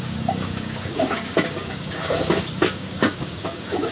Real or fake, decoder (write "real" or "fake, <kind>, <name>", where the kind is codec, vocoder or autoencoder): fake, codec, DAC